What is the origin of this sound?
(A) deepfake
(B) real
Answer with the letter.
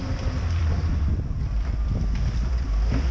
A